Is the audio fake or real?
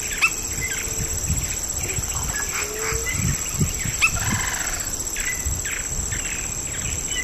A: real